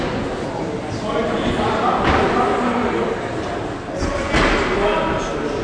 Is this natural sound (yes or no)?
yes